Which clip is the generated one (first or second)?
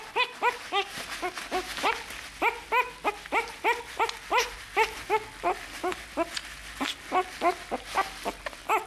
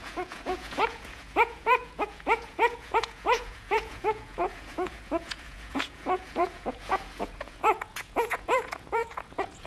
second